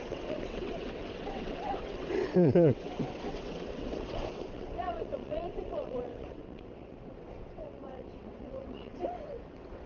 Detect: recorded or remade remade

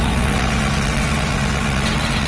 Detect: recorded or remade remade